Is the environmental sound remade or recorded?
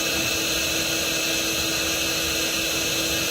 recorded